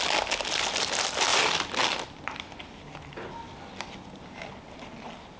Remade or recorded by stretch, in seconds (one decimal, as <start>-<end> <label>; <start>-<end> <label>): 0.0-1.3 recorded; 1.3-4.5 remade; 4.5-5.4 recorded